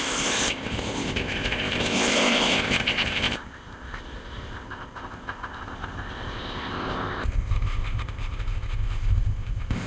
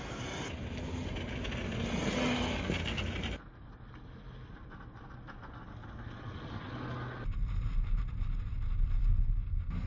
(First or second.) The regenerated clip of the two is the first